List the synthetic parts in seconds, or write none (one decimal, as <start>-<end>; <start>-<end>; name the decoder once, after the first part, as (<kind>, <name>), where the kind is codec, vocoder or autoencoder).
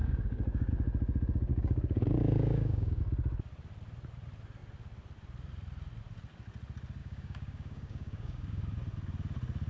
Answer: 0.0-0.7 (codec, DAC); 1.5-3.0; 7.0-8.6